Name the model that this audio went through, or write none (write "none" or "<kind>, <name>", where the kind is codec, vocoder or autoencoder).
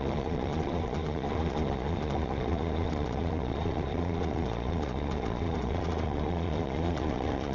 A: vocoder, Vocos